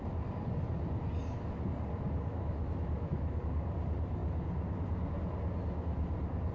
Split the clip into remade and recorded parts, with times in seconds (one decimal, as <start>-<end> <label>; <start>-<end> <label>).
0.0-2.3 recorded; 2.3-3.4 remade; 3.4-6.5 recorded